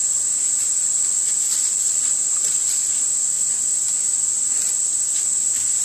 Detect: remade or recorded recorded